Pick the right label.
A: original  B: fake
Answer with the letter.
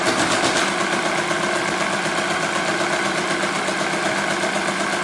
A